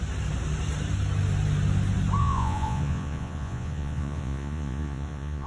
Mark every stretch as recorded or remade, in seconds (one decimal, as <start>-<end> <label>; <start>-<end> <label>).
0.0-2.2 recorded; 2.2-5.5 remade